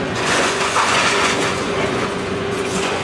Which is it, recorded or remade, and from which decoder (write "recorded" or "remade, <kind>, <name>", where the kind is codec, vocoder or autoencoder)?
remade, vocoder, Vocos